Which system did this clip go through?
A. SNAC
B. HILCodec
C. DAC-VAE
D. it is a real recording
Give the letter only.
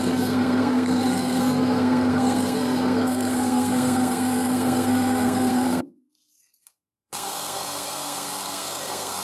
A